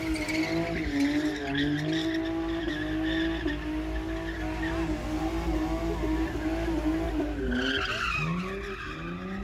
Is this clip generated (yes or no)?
no